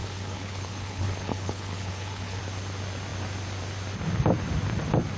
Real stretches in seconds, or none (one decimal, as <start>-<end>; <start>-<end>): 2.4-5.2